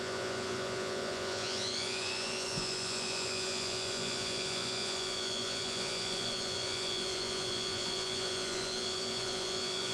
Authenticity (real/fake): fake